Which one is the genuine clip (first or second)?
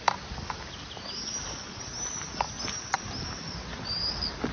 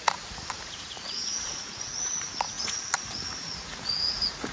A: first